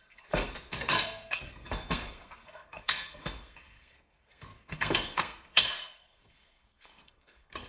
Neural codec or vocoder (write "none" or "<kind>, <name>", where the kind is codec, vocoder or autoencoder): codec, SNAC